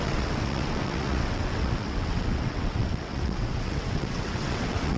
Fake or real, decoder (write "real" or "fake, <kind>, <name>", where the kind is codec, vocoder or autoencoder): fake, vocoder, WaveNeXt